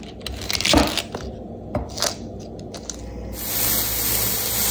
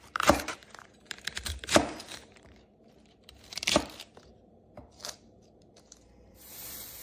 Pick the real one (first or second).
first